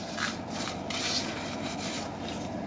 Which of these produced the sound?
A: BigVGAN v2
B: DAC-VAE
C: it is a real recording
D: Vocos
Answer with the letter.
C